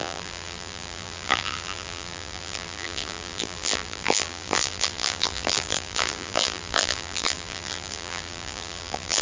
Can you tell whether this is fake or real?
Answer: fake